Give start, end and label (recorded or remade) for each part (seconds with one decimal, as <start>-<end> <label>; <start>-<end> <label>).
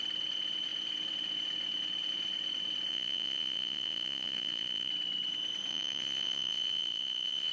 0.0-2.9 recorded; 2.9-4.9 remade; 4.9-5.7 recorded; 5.7-7.5 remade